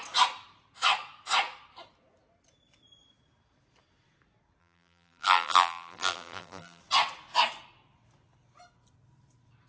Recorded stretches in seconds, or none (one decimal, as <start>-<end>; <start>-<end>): 0.0-4.6; 6.8-9.7

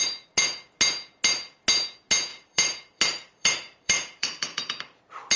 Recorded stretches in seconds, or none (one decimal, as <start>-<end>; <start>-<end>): 0.0-2.3; 5.0-5.4

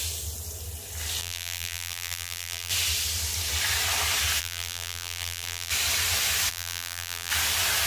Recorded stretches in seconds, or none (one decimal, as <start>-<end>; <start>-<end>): 0.0-1.2; 2.7-4.4; 5.7-6.5; 7.3-7.9

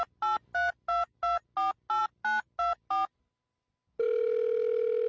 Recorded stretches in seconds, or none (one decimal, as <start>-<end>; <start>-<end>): 0.0-5.1

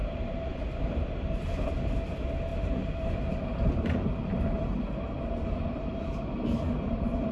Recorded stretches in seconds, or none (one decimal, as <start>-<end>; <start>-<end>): 1.7-2.5